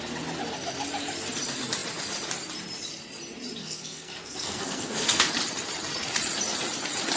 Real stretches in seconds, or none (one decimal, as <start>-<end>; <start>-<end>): 0.0-3.6; 5.3-7.2